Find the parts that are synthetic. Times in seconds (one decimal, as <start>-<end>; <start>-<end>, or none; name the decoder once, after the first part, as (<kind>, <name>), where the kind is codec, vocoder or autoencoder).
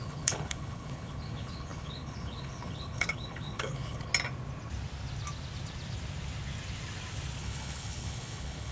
0.0-4.1 (codec, HILCodec); 7.4-8.7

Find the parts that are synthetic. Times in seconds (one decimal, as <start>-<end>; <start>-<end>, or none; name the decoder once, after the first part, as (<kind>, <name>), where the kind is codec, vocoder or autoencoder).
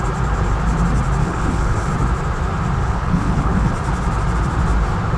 1.2-1.9 (codec, HILCodec); 2.8-3.7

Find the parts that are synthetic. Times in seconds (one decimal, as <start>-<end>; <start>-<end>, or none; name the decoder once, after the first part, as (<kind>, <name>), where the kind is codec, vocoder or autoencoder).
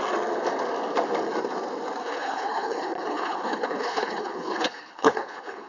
2.0-5.7 (codec, HILCodec)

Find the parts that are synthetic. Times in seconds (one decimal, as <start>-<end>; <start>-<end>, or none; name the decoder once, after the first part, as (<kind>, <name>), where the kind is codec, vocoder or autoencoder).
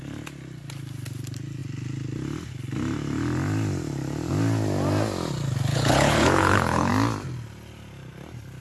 5.7-6.9 (codec, HILCodec)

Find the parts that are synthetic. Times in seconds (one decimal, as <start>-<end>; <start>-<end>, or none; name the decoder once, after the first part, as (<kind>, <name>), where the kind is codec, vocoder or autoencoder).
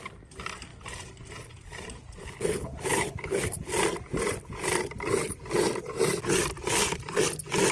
2.2-3.7 (codec, HILCodec)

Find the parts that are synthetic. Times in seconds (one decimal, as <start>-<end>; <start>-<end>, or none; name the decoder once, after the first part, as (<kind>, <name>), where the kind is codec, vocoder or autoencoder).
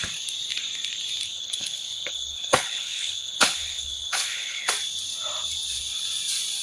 1.3-4.7 (codec, HILCodec)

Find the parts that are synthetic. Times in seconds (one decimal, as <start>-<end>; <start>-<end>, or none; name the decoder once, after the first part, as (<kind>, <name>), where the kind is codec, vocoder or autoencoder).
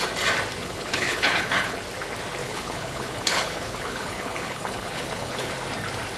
0.6-1.8 (codec, HILCodec); 2.4-5.5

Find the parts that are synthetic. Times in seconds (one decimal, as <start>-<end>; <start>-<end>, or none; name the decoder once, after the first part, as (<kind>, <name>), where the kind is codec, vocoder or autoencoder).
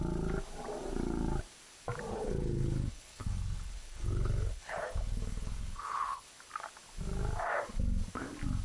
2.1-6.3 (codec, HILCodec)